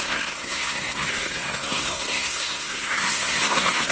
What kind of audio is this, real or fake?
fake